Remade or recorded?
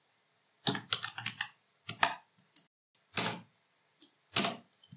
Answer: recorded